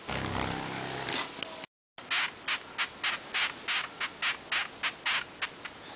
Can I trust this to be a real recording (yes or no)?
yes